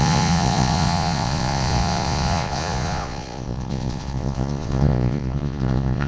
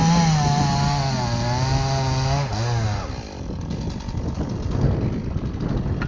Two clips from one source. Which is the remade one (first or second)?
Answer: first